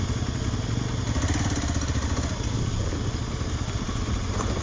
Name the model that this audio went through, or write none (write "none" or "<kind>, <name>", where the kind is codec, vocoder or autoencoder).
none